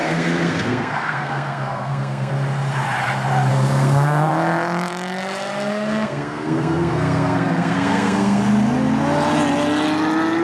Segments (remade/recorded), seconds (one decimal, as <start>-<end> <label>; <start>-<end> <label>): 0.0-2.3 remade; 2.3-3.5 recorded; 3.5-4.3 remade; 4.3-5.7 recorded; 5.7-8.4 remade; 8.4-10.4 recorded